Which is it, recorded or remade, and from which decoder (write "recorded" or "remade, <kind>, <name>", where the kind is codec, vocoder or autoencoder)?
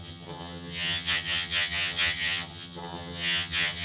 remade, vocoder, HiFi-GAN